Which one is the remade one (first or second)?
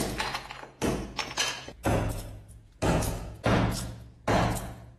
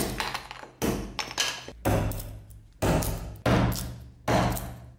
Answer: first